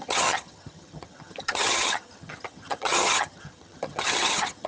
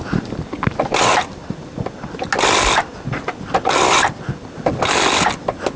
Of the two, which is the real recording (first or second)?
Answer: second